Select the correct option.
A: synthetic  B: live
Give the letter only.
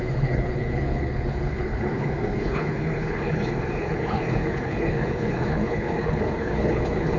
A